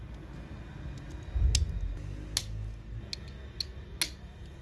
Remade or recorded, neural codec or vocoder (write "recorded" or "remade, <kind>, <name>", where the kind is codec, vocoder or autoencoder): recorded